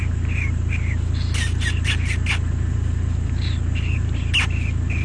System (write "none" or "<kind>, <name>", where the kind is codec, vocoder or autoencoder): none